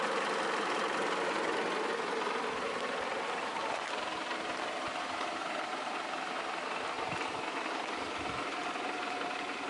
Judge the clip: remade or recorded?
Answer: recorded